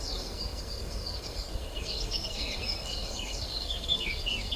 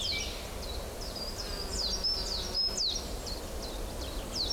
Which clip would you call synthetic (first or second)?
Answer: first